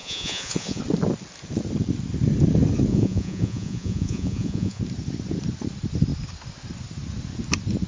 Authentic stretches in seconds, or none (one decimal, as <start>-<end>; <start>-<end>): 0.8-2.9; 4.8-7.9